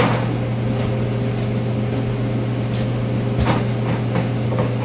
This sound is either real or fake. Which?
real